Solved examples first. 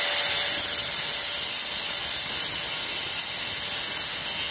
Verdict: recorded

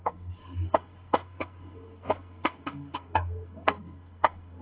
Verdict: remade